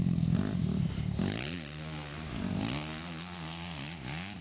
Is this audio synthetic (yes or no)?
no